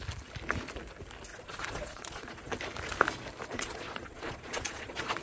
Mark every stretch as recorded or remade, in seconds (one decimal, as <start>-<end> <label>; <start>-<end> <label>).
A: 0.0-1.3 recorded; 1.3-2.5 remade; 2.5-3.5 recorded; 3.5-5.2 remade